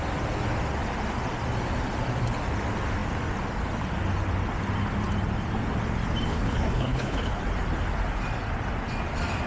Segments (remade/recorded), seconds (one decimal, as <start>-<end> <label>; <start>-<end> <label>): 0.0-6.3 recorded; 6.3-7.4 remade; 7.4-9.5 recorded